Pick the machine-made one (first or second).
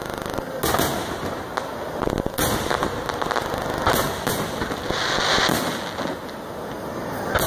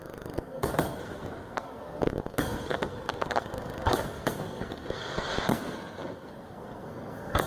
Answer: second